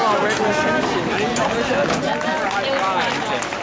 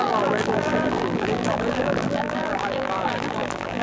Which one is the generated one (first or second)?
second